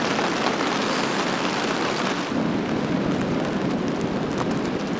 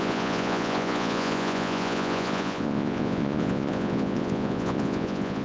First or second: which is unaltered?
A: first